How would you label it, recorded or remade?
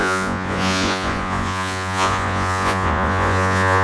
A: remade